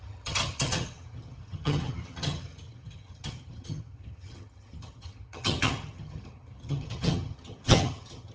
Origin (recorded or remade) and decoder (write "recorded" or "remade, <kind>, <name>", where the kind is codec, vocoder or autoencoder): remade, vocoder, HiFi-GAN